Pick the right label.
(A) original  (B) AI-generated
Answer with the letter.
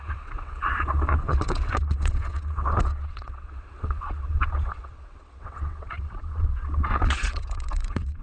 B